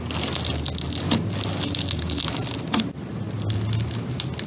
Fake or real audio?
real